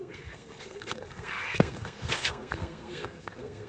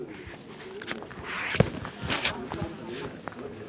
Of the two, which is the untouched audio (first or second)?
second